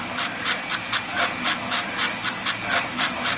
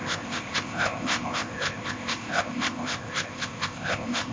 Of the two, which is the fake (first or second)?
second